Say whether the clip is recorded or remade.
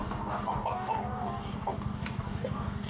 remade